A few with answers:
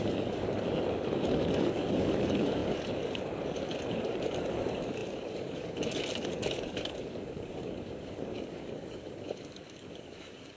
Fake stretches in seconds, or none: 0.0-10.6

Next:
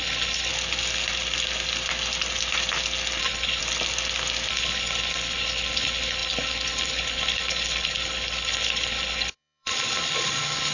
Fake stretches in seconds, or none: 0.0-0.5; 3.2-3.6; 4.5-10.7

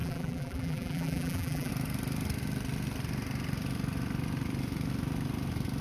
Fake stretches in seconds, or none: 0.0-1.7

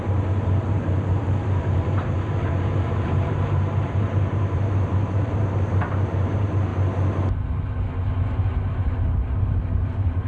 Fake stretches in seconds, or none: 0.0-6.7; 9.0-10.3